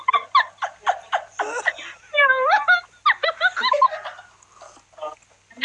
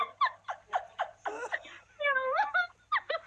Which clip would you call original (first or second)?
first